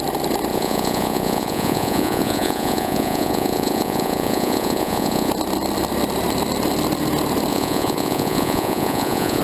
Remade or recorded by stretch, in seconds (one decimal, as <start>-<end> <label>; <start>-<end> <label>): 0.0-0.5 recorded; 0.5-5.3 remade; 5.3-7.5 recorded; 7.5-9.4 remade